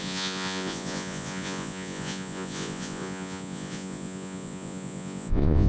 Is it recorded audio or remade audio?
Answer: remade